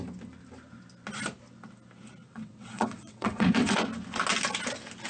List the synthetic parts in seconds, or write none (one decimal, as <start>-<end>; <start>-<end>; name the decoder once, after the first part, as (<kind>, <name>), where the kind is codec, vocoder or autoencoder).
2.2-3.8 (vocoder, WaveNeXt)